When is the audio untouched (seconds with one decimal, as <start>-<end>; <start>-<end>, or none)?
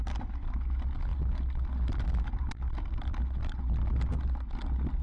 0.0-5.0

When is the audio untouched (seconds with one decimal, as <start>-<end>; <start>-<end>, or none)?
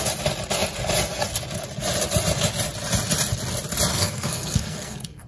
0.0-3.9